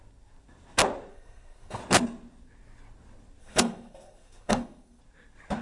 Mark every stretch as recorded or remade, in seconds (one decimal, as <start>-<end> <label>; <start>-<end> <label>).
0.0-1.1 recorded; 1.1-1.8 remade; 1.8-3.4 recorded; 3.4-5.0 remade; 5.0-5.6 recorded